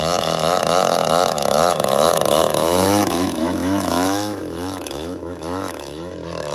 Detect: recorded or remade remade